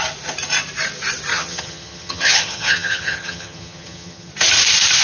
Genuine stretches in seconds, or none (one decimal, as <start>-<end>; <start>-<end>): 0.0-1.3; 4.3-5.0